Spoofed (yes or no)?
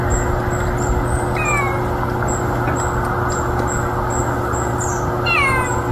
no